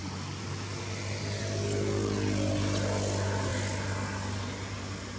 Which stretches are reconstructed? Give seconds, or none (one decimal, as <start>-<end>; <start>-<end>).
none